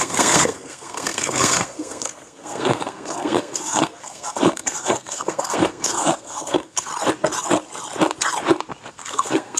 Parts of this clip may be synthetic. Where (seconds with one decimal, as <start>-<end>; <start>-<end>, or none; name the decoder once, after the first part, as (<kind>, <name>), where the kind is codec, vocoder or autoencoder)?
0.0-6.9 (codec, SNAC); 8.9-9.6